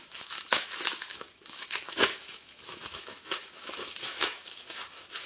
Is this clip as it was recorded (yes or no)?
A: no